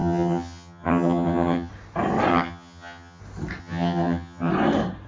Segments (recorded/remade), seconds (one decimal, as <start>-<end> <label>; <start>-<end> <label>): 0.0-1.7 remade; 1.7-2.3 recorded; 2.3-3.2 remade; 3.2-3.6 recorded; 3.6-4.5 remade; 4.5-5.1 recorded